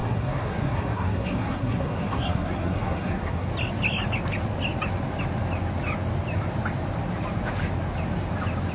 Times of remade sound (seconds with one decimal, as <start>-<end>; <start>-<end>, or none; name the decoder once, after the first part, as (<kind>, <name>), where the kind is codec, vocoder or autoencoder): 0.0-3.5 (codec, SNAC)